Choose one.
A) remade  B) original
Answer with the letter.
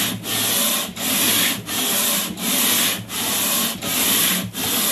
B